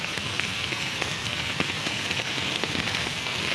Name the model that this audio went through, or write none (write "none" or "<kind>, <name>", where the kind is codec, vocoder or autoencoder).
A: codec, SNAC